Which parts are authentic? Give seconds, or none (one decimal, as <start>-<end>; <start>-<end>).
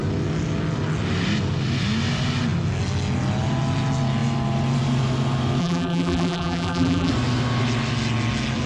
0.0-5.6; 7.1-8.7